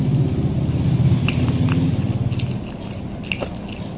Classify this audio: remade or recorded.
recorded